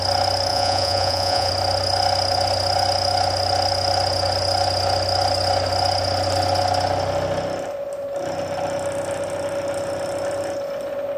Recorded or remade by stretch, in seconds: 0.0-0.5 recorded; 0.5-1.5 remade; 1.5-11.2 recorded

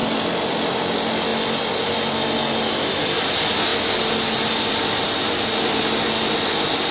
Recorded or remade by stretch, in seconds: 0.0-6.9 recorded

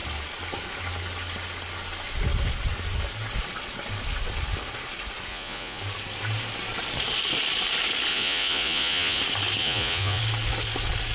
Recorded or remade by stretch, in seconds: 0.0-5.3 recorded; 5.3-5.8 remade; 5.8-8.1 recorded; 8.1-9.2 remade; 9.2-9.6 recorded; 9.6-10.2 remade; 10.2-11.1 recorded

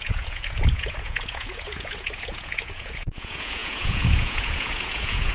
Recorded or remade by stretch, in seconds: 0.0-5.3 remade

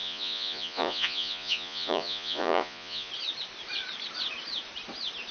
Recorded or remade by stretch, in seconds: 0.0-3.1 remade; 3.1-5.3 recorded

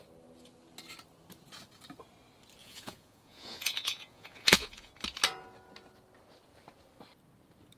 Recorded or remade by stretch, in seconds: 0.0-2.6 recorded; 2.6-4.9 remade; 4.9-7.8 recorded

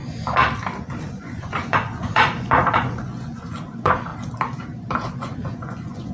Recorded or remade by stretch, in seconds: 0.0-1.1 recorded; 1.1-4.1 remade; 4.1-5.1 recorded; 5.1-6.1 remade

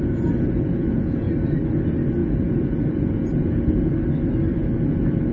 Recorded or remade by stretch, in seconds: 0.0-1.3 remade; 1.3-2.2 recorded; 2.2-3.9 remade; 3.9-5.3 recorded